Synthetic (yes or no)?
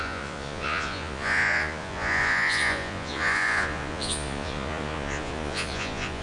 yes